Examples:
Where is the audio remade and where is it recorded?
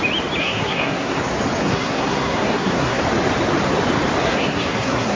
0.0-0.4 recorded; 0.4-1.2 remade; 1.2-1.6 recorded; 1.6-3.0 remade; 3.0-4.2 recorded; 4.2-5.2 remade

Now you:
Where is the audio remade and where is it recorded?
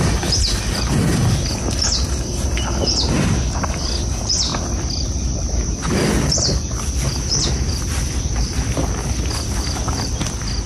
0.0-10.7 recorded